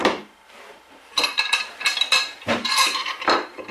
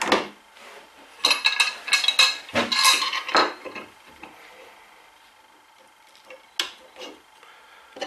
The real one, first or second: second